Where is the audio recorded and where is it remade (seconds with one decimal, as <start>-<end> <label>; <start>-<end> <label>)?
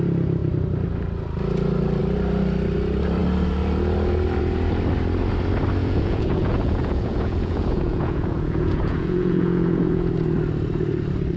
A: 0.0-5.8 recorded; 5.8-10.1 remade; 10.1-11.4 recorded